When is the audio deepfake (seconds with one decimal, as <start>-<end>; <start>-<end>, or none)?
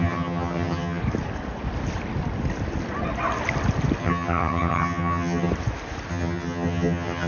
0.0-1.0; 4.0-5.5; 6.1-7.3